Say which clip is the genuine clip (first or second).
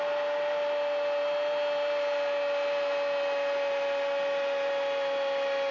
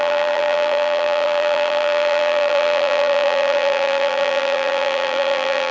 first